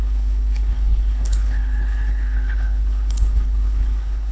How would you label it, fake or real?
fake